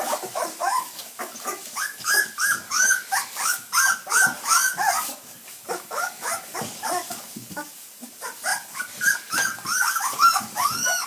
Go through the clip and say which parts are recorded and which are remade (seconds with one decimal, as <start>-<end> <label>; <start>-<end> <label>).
0.0-11.1 remade